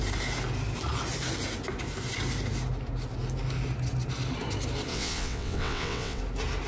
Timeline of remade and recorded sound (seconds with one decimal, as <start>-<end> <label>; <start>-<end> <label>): 0.0-4.9 recorded; 4.9-6.2 remade; 6.2-6.7 recorded